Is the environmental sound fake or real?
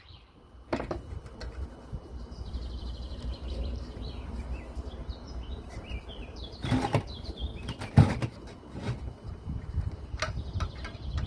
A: fake